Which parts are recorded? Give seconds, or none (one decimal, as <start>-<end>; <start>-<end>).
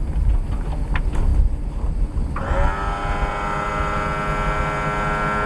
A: 0.0-5.5